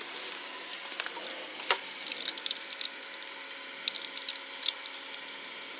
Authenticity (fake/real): real